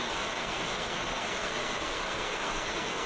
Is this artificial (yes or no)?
yes